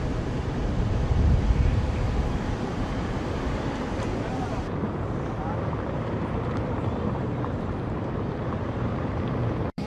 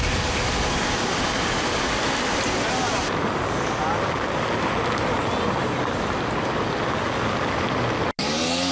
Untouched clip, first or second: second